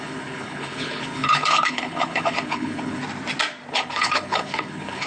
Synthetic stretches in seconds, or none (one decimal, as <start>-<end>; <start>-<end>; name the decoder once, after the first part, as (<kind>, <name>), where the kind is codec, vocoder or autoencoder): 0.0-3.0 (codec, HILCodec); 3.7-5.1